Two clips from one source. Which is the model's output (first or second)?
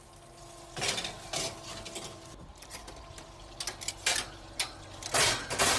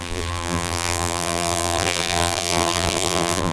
second